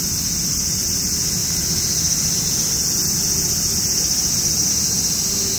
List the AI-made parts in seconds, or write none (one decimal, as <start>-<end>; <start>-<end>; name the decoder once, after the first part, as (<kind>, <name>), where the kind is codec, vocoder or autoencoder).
none